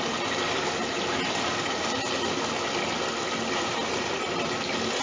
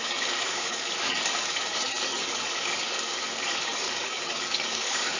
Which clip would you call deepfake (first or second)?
second